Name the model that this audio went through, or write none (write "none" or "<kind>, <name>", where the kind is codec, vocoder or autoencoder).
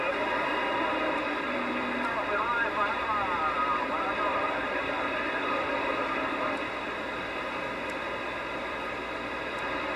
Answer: vocoder, BigVGAN v2